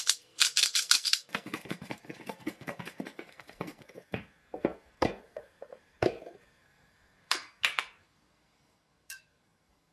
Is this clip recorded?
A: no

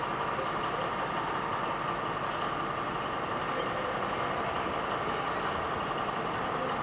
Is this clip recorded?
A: yes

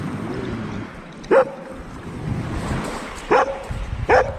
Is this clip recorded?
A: yes